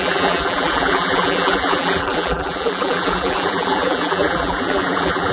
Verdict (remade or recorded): remade